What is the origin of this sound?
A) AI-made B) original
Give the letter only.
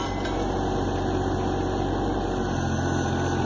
B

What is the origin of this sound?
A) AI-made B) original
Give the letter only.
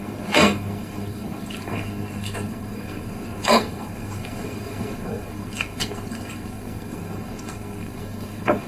A